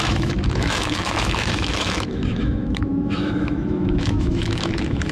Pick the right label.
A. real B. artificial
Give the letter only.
B